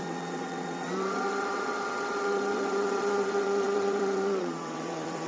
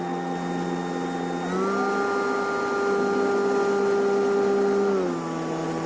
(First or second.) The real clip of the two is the second